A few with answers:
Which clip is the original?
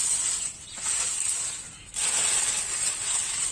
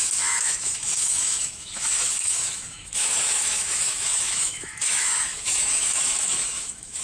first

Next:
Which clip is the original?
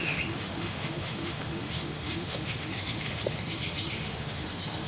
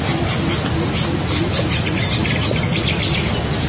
second